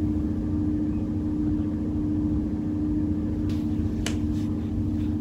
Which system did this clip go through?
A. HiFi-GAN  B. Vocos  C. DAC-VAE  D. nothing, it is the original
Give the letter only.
D